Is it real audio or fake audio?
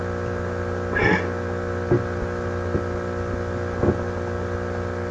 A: real